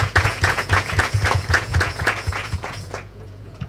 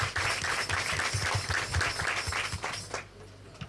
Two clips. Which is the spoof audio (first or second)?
first